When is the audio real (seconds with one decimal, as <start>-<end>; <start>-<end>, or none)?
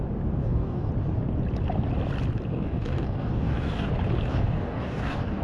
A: 0.0-0.4; 0.9-2.5; 3.9-4.3